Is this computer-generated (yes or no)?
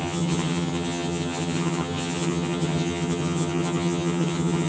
yes